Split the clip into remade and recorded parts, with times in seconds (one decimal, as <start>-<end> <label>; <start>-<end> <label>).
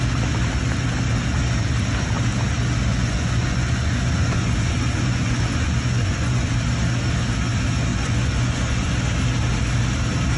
0.0-2.9 recorded; 2.9-6.5 remade; 6.5-7.9 recorded; 7.9-9.0 remade; 9.0-10.4 recorded